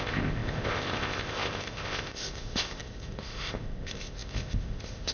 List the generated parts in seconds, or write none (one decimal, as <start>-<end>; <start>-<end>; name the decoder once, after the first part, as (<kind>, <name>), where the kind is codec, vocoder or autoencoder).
0.0-5.1 (codec, ZipCodec)